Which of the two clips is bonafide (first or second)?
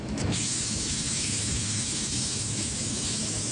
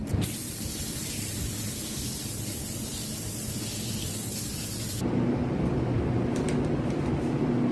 second